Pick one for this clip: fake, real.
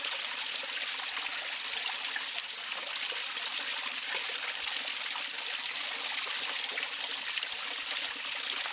real